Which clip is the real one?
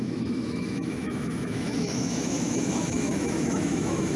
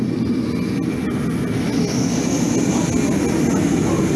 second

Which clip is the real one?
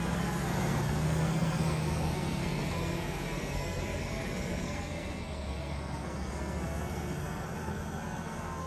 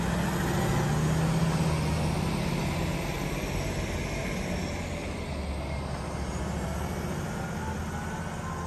second